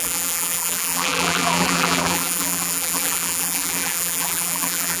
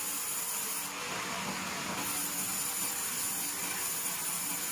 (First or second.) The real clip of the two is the second